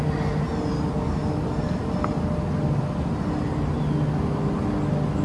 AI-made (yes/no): no